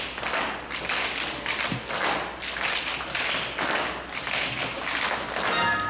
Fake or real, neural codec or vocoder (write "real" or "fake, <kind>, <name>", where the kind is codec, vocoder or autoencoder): real